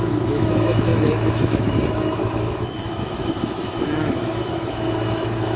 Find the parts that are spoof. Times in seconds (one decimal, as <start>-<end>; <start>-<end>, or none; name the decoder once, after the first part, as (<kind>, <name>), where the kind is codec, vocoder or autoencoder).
0.0-5.6 (autoencoder, DAC-VAE)